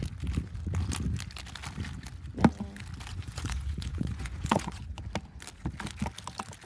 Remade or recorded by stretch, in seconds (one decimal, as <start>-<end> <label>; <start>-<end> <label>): 0.0-3.1 recorded; 3.1-5.0 remade; 5.0-6.7 recorded